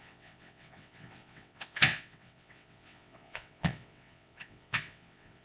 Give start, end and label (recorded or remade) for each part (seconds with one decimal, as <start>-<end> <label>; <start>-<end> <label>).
0.0-5.4 remade